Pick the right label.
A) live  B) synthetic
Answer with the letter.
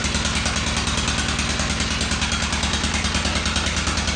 A